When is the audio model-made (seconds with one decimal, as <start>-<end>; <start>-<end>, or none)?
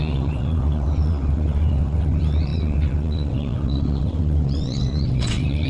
0.0-5.7